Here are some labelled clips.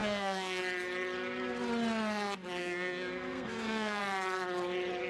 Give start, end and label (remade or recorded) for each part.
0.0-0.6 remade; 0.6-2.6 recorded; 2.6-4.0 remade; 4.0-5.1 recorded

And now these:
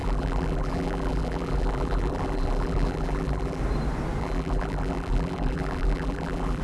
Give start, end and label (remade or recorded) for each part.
0.0-3.6 remade; 3.6-4.2 recorded; 4.2-6.6 remade

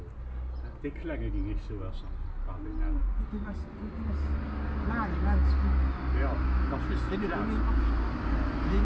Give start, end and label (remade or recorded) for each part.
0.0-8.8 recorded

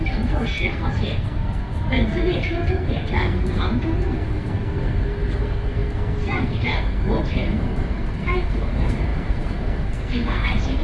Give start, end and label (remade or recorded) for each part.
0.0-10.8 remade

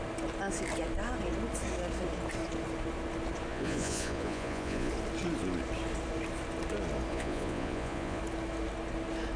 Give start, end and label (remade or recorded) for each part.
0.0-3.5 recorded; 3.5-4.9 remade; 4.9-7.1 recorded; 7.1-8.2 remade; 8.2-9.4 recorded

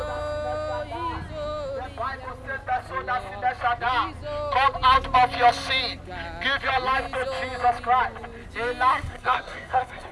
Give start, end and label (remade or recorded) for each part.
0.0-8.9 recorded; 8.9-10.1 remade

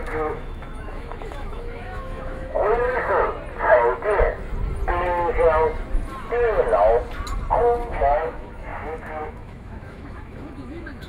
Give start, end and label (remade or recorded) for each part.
0.0-2.7 remade; 2.7-7.9 recorded; 7.9-11.1 remade

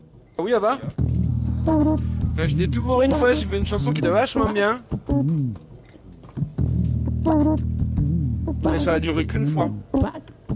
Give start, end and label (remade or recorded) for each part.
0.0-1.3 recorded; 1.3-1.8 remade; 1.8-2.3 recorded; 2.3-4.0 remade; 4.0-8.7 recorded; 8.7-9.6 remade; 9.6-10.6 recorded